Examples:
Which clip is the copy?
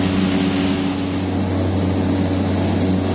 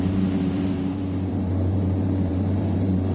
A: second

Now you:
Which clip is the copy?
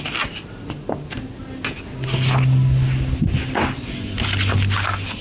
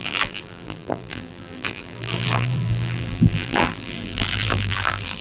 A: second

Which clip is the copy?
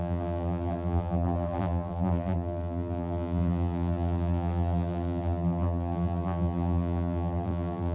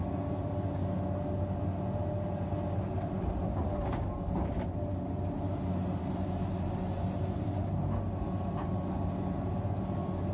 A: first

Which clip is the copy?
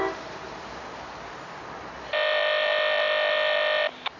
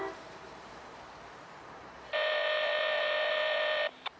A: second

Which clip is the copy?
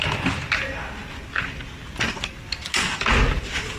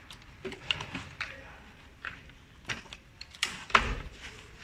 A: second